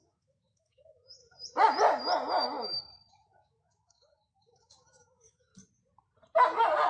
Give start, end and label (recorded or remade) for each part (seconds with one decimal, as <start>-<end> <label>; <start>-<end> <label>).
0.0-1.2 remade; 1.2-3.1 recorded; 3.1-5.5 remade; 5.5-6.9 recorded